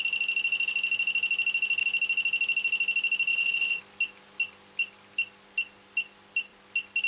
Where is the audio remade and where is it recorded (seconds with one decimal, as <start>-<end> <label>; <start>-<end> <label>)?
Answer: 0.0-3.3 recorded; 3.3-3.8 remade; 3.8-7.1 recorded